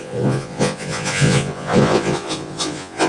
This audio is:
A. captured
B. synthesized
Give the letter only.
B